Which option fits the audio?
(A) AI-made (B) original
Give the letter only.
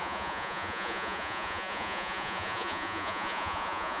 A